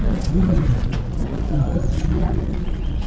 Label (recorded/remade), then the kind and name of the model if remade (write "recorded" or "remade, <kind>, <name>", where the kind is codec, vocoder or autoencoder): remade, vocoder, Vocos